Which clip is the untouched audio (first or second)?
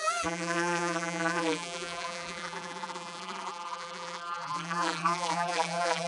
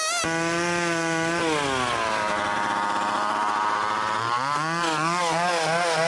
second